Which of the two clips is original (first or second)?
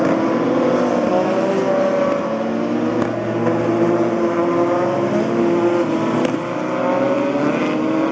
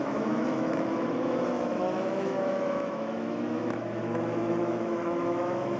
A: first